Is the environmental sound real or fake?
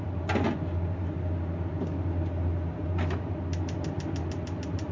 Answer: real